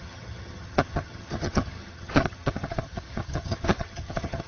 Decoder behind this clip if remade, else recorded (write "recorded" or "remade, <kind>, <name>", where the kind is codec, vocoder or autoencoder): remade, vocoder, HiFi-GAN